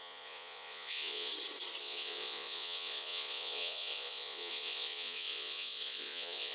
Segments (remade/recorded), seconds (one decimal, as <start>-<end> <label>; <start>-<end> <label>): 0.0-1.3 remade; 1.3-1.8 recorded; 1.8-6.5 remade